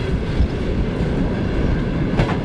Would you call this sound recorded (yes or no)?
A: yes